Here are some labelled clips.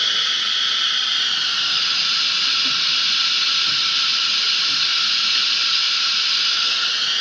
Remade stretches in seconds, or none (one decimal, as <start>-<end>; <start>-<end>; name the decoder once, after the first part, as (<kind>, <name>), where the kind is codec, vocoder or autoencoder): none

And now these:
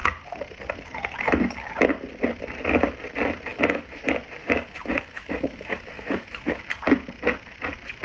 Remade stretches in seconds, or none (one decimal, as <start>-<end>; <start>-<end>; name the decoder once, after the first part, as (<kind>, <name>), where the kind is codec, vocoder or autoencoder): 3.5-4.0 (autoencoder, DAC-VAE); 4.4-6.6

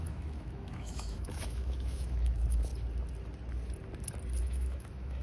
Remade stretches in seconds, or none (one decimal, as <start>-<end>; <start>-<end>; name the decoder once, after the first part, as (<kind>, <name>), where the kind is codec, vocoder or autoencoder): 0.0-2.7 (autoencoder, DAC-VAE); 4.4-5.2